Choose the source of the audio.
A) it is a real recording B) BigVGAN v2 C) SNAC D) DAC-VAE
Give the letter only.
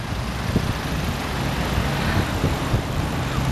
A